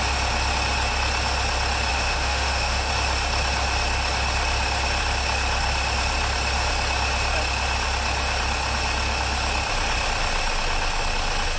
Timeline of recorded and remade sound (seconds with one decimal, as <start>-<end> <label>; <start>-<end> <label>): 0.0-1.9 recorded; 1.9-2.9 remade; 2.9-11.6 recorded